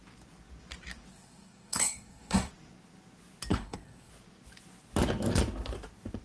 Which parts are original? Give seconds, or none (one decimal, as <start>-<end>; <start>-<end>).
0.0-1.1; 2.5-3.5; 4.1-6.2